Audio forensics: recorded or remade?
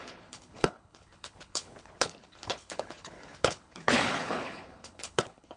remade